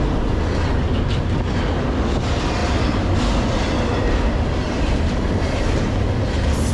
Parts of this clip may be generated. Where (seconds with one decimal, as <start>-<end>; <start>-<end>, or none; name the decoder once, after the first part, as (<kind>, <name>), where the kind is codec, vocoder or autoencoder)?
none